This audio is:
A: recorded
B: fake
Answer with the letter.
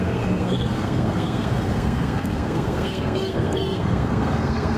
B